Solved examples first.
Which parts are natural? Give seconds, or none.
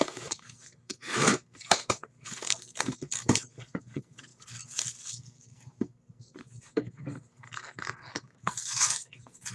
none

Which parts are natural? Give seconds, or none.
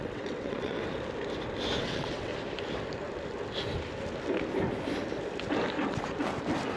0.8-1.8; 2.3-6.8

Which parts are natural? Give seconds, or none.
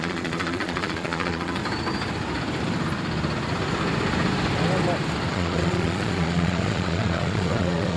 1.6-5.3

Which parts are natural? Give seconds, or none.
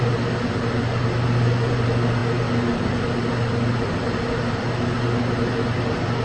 0.0-6.2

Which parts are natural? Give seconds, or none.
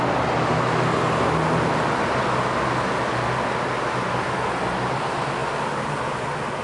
0.0-6.6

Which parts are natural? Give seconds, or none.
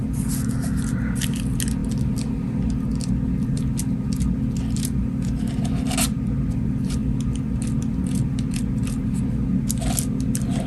0.0-10.7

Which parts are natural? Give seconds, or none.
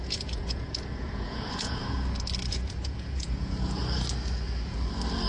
1.8-2.5; 3.8-5.3